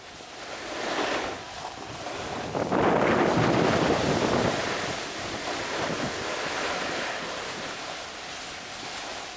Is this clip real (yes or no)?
yes